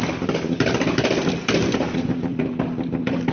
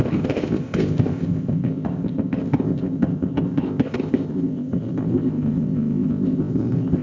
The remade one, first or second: second